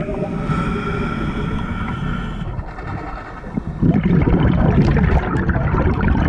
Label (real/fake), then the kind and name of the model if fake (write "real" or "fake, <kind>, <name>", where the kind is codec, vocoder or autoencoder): real